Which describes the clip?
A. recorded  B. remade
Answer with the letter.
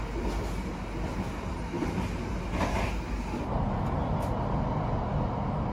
A